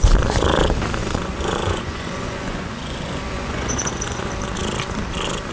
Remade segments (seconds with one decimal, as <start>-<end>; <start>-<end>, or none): 1.0-4.3